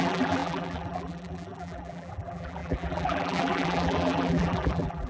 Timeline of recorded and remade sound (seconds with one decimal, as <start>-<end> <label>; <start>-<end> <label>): 0.0-5.1 remade